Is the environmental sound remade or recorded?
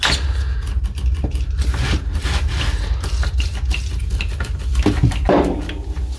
recorded